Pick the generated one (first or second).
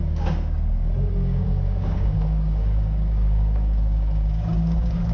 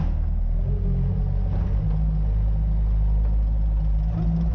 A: first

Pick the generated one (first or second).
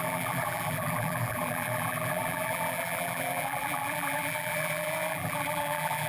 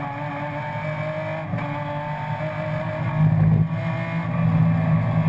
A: first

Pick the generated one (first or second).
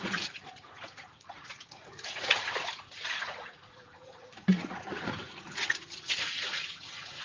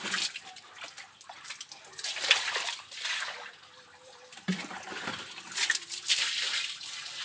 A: first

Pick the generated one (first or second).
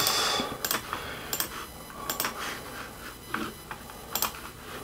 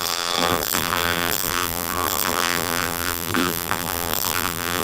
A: second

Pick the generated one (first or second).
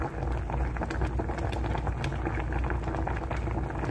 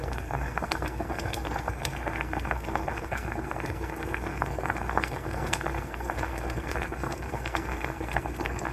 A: second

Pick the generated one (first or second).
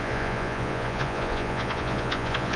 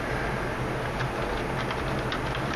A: first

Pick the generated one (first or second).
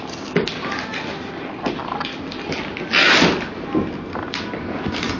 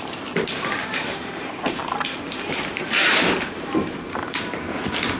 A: second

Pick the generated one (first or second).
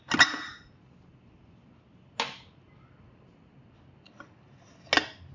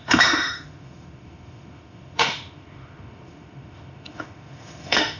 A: second